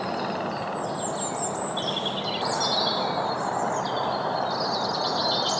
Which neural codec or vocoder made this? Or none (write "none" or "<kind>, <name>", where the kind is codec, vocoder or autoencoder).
none